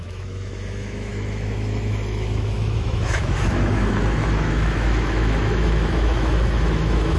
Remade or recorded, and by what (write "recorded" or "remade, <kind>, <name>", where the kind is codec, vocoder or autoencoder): remade, autoencoder, DAC-VAE